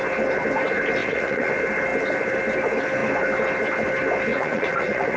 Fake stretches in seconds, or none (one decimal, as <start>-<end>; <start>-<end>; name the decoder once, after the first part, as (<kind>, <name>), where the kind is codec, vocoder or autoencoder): 1.0-1.5 (vocoder, Vocos); 4.3-5.2

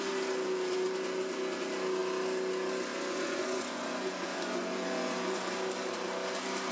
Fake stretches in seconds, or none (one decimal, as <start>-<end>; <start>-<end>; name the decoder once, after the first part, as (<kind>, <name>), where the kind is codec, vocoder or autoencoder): 2.9-5.4 (vocoder, Vocos)

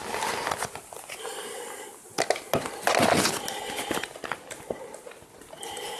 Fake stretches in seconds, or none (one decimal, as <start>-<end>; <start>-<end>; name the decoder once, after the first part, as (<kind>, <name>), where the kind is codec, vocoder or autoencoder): none

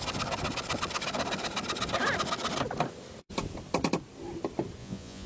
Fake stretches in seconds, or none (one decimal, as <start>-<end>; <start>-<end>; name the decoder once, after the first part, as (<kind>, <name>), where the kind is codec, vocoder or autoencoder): 4.8-5.3 (vocoder, Vocos)

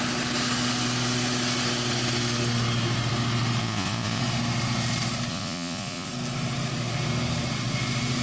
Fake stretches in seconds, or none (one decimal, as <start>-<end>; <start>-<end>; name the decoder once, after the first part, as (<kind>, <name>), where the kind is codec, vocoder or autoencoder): 3.6-4.2 (vocoder, Vocos); 5.3-6.1

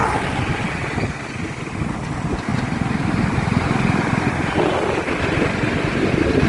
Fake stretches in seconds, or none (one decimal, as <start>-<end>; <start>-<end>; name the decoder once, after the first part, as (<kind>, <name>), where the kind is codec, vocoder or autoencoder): none